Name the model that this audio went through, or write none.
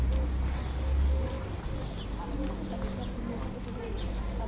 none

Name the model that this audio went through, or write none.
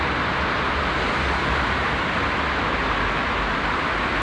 none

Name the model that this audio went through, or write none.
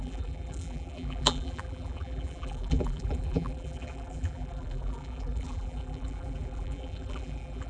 vocoder, BigVGAN v2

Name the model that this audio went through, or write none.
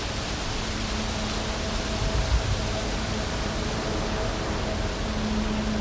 none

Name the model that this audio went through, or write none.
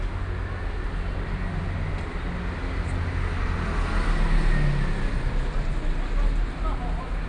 none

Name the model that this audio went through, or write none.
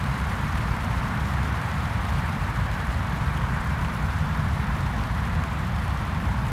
vocoder, BigVGAN v2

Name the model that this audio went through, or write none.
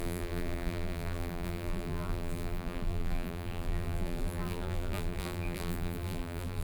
vocoder, BigVGAN v2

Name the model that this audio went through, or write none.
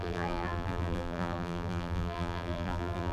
vocoder, BigVGAN v2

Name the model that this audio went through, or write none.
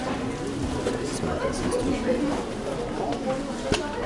none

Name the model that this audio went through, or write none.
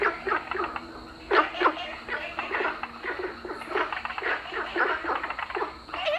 none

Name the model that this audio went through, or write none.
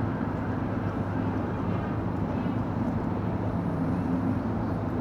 vocoder, BigVGAN v2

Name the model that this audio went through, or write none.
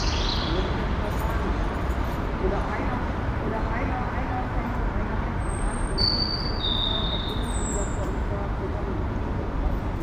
none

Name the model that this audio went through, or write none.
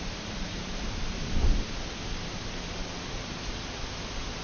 none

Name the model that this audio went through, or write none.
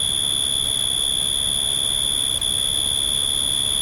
none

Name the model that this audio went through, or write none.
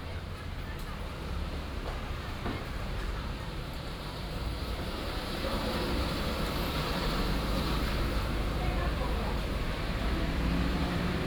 vocoder, BigVGAN v2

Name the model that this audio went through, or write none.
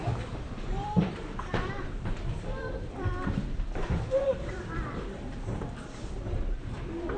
vocoder, BigVGAN v2